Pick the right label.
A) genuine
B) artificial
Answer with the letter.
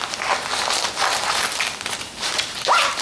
A